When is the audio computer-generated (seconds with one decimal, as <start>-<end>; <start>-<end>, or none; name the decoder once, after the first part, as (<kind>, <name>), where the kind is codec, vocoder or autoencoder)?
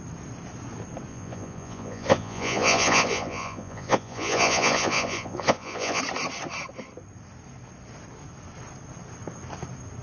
1.1-6.0 (vocoder, Vocos)